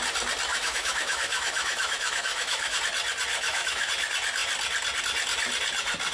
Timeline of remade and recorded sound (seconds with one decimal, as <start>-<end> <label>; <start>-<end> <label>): 0.0-0.5 recorded; 0.5-2.8 remade; 2.8-3.3 recorded; 3.3-3.9 remade; 3.9-6.1 recorded